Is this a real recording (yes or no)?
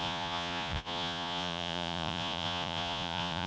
no